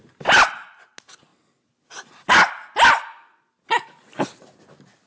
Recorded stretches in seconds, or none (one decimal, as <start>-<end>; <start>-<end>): 0.0-5.1